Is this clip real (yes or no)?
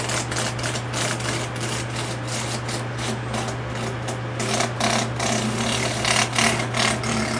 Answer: yes